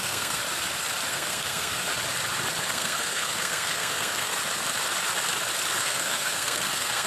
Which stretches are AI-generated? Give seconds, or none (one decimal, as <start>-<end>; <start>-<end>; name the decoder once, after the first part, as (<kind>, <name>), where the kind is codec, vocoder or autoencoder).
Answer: 0.0-0.4 (codec, SNAC); 1.1-1.9; 2.6-4.3; 5.8-7.1